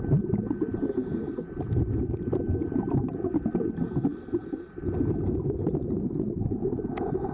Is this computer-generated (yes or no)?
no